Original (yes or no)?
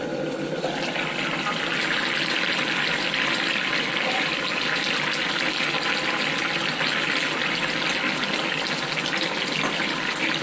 yes